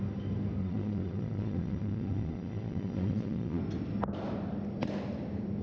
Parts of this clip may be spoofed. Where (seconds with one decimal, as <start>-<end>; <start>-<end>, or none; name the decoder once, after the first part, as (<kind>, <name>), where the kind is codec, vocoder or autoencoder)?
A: 0.6-3.6 (vocoder, Vocos)